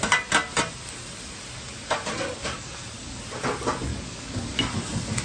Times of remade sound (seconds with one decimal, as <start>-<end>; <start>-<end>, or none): 2.4-3.2; 3.9-4.7